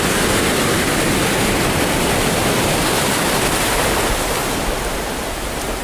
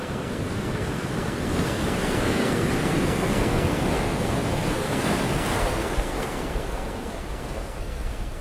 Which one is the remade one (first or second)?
second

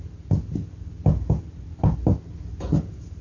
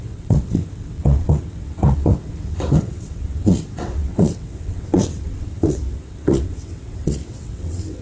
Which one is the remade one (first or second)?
second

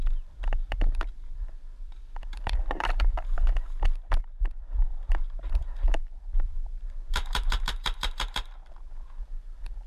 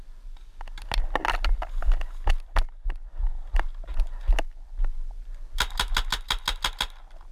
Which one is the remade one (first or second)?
first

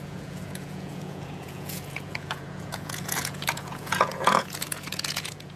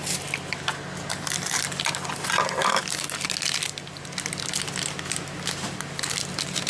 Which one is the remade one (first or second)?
first